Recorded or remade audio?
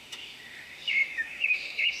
remade